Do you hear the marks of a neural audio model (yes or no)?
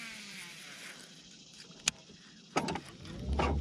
no